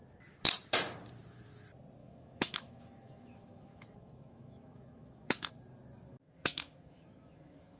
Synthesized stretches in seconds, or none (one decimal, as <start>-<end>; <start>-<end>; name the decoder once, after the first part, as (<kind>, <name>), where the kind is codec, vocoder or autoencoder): 2.0-5.5 (autoencoder, DAC-VAE); 6.1-7.8

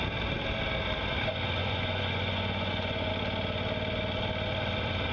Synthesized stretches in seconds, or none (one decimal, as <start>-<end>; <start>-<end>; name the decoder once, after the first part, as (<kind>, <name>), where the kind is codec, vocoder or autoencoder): 1.6-3.1 (vocoder, Vocos)